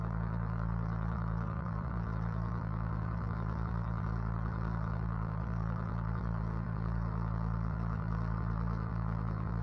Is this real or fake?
fake